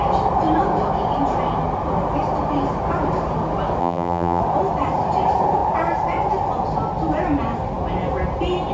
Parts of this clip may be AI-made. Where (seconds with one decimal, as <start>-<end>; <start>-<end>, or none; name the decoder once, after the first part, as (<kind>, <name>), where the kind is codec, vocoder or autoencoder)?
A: 3.8-4.4 (vocoder, BigVGAN v2)

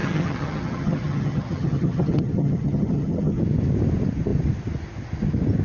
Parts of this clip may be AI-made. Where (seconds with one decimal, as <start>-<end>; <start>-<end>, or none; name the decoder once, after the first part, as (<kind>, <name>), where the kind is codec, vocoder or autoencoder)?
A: 0.0-3.4 (vocoder, HiFi-GAN)

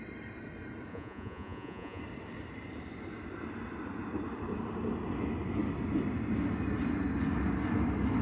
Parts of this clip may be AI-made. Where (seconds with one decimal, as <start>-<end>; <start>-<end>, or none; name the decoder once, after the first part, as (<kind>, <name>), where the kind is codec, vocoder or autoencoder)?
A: 0.9-2.0 (vocoder, Vocos)

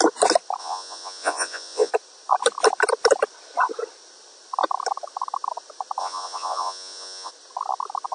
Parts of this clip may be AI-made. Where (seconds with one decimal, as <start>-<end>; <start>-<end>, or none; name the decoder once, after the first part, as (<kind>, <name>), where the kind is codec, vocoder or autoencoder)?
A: 0.6-1.9 (vocoder, Vocos); 6.0-7.3